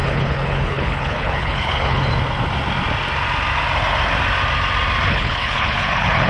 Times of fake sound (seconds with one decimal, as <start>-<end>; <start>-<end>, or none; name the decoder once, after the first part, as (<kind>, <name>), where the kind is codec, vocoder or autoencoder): 0.0-2.1 (codec, HILCodec); 5.1-6.3